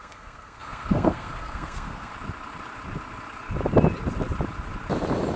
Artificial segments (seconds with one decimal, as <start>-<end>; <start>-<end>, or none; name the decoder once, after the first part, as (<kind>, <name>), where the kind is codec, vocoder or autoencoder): 0.0-2.1 (codec, SNAC)